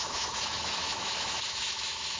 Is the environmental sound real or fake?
fake